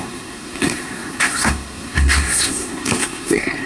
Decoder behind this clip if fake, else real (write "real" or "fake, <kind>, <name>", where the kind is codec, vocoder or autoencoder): fake, codec, SNAC